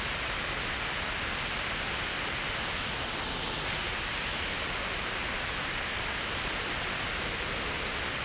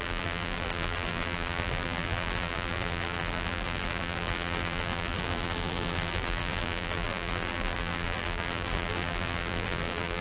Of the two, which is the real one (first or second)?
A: first